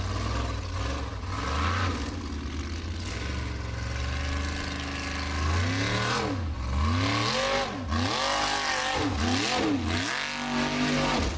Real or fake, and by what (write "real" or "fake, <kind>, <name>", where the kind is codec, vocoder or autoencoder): real